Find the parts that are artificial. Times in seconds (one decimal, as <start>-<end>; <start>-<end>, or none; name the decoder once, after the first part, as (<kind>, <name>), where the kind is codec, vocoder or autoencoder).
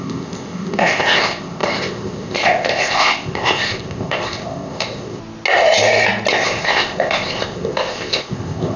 0.0-5.2 (codec, ZipCodec); 6.3-8.8